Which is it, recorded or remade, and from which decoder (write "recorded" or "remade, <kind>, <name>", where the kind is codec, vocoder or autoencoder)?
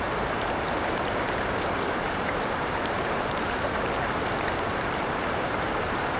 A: remade, vocoder, BigVGAN v2